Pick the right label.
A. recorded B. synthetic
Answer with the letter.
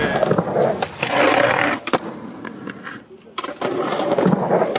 A